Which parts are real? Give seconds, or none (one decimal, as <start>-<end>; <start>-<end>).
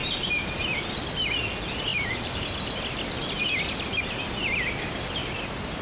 0.6-1.9; 2.7-5.2